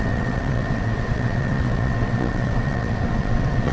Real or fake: fake